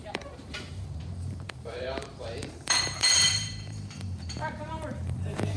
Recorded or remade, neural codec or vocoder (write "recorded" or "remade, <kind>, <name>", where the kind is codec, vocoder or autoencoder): remade, vocoder, BigVGAN v2